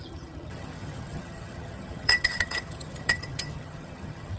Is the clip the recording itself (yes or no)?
no